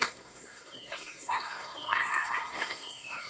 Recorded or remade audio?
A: remade